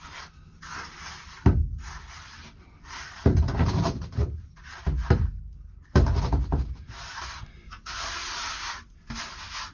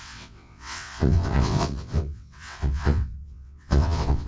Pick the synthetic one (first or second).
second